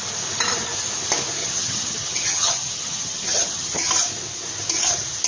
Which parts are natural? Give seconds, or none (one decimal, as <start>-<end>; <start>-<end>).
0.0-1.4; 3.9-5.3